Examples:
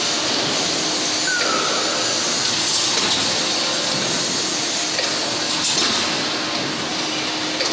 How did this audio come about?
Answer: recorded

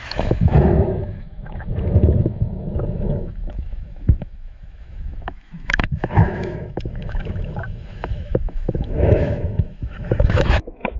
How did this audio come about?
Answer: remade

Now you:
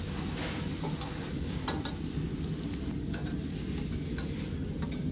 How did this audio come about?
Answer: recorded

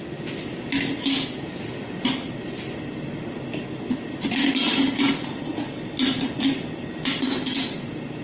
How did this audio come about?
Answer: recorded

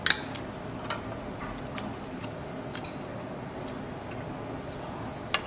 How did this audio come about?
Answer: recorded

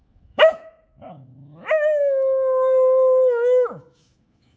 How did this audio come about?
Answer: remade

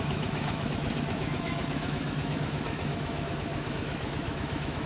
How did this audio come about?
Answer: remade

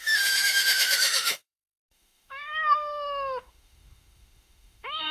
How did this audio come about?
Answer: remade